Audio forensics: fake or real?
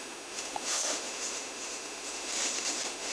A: fake